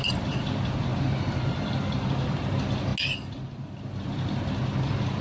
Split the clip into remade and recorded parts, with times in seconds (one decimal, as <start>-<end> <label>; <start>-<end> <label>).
0.0-0.9 remade; 0.9-2.3 recorded; 2.3-2.9 remade; 2.9-3.6 recorded; 3.6-5.2 remade